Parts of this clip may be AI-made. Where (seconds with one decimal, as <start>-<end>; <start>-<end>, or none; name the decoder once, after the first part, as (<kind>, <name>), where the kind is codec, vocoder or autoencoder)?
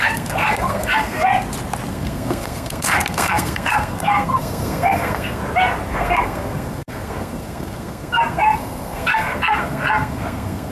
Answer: 0.0-1.3 (codec, SNAC); 1.9-5.4; 5.9-10.7